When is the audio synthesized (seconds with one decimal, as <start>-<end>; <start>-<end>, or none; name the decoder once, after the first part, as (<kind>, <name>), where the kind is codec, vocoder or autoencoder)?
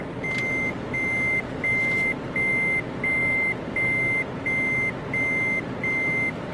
none